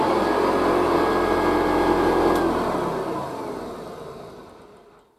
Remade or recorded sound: recorded